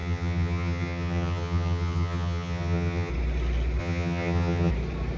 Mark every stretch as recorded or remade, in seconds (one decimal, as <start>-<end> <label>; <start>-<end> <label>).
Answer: 0.0-3.1 remade; 3.1-3.8 recorded; 3.8-4.7 remade; 4.7-5.2 recorded